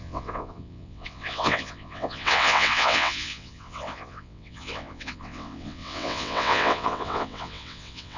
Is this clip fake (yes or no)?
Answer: yes